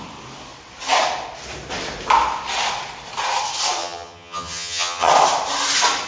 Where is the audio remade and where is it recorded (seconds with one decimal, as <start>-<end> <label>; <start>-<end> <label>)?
0.0-3.8 recorded; 3.8-5.1 remade; 5.1-6.1 recorded